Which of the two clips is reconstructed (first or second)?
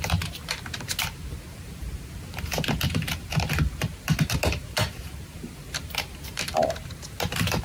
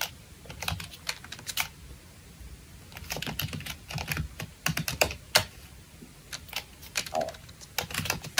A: first